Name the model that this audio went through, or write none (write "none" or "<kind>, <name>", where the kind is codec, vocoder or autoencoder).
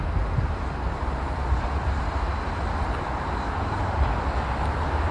none